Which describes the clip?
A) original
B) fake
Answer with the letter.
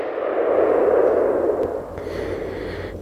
A